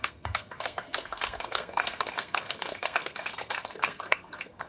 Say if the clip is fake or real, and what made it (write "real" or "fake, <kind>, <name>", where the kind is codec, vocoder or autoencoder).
fake, codec, SNAC